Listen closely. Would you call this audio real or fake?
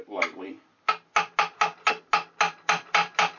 real